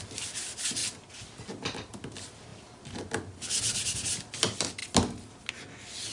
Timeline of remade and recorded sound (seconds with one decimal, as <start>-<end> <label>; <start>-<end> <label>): 0.0-6.1 recorded